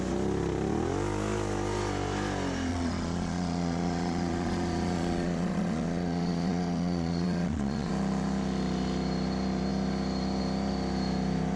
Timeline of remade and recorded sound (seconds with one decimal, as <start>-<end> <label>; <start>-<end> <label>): 0.0-2.7 recorded; 2.7-7.9 remade; 7.9-11.6 recorded